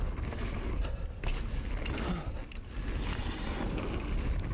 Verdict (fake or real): real